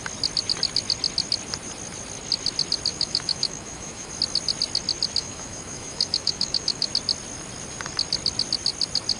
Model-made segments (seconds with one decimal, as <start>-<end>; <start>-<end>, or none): 2.9-4.1; 5.2-6.9